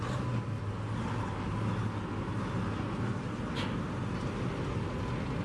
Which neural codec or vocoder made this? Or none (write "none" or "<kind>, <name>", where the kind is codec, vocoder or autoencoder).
none